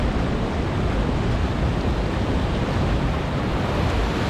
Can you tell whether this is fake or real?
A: real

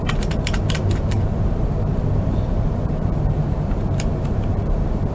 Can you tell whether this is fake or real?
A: fake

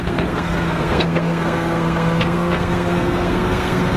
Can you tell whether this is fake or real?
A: fake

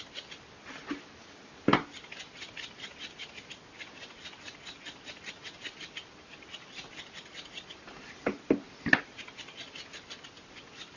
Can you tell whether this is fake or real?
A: real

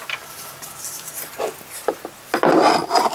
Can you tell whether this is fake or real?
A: real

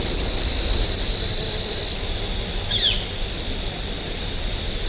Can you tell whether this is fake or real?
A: real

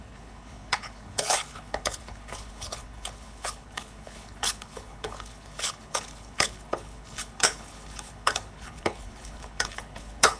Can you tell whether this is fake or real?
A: fake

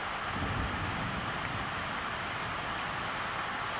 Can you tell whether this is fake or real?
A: real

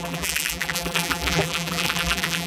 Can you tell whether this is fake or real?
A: fake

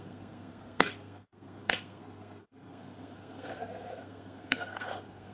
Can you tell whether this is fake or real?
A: fake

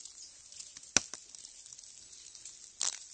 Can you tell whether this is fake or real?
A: real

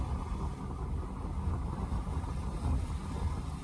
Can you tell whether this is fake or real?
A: real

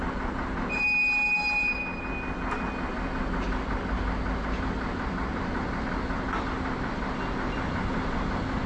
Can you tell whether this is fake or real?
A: real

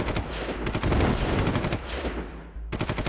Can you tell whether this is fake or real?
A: real